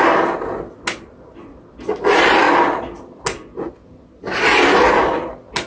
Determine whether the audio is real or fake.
real